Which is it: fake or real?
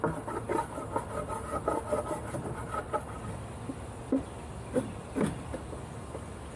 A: real